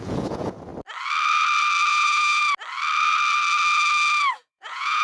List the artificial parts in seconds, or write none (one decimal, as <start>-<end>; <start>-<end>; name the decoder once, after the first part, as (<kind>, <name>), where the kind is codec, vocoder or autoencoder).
0.0-0.7 (vocoder, Vocos); 1.9-2.4; 4.3-5.0